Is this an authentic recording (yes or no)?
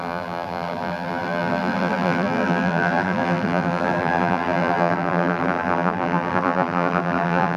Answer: no